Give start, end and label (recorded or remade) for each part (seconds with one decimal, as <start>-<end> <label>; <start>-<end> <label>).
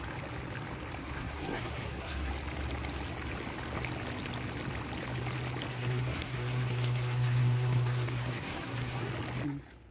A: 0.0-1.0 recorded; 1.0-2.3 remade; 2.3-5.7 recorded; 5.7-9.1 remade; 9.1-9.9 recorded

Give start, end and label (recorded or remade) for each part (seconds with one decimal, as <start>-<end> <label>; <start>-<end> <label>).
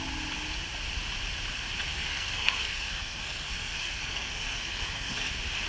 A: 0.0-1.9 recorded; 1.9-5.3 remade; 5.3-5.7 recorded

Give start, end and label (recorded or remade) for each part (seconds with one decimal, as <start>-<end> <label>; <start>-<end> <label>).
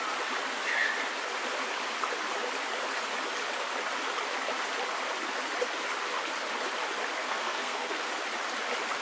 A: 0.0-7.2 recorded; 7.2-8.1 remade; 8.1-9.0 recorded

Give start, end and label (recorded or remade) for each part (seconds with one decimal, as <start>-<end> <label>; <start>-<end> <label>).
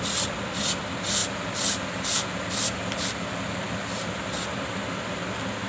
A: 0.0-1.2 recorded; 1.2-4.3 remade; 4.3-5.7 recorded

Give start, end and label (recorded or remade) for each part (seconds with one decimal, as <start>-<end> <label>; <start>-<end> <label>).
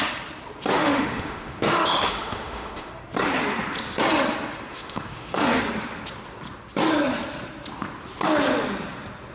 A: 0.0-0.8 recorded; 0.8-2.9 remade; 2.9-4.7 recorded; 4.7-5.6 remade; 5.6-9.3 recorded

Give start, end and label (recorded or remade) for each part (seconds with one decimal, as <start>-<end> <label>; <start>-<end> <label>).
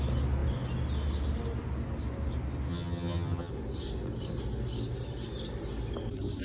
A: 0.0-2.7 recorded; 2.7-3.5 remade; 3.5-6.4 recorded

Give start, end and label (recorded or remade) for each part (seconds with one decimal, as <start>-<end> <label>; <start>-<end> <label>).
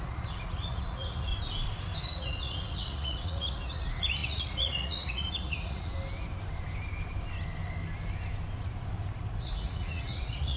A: 0.0-1.3 remade; 1.3-2.0 recorded; 2.0-5.9 remade; 5.9-9.4 recorded; 9.4-10.6 remade